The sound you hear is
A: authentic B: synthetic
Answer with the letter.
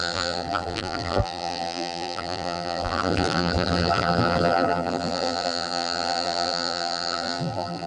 B